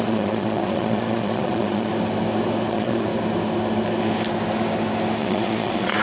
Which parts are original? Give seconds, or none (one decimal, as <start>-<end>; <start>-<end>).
1.9-2.7; 3.1-5.2